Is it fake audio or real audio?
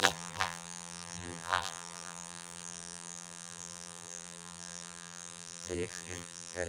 fake